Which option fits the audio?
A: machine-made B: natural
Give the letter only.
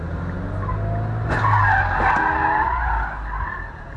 B